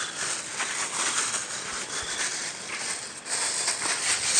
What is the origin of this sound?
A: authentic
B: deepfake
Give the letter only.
A